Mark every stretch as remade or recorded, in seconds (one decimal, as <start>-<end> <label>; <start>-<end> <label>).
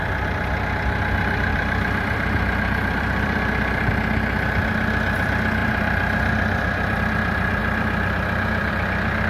0.0-1.5 recorded; 1.5-3.9 remade; 3.9-5.6 recorded; 5.6-7.0 remade; 7.0-7.6 recorded; 7.6-8.7 remade; 8.7-9.3 recorded